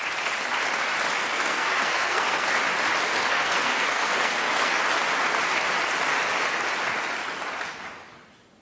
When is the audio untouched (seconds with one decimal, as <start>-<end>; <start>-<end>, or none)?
0.0-1.2; 2.6-3.1; 4.8-8.6